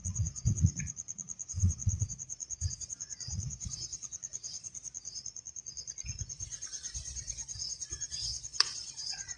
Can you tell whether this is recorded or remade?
remade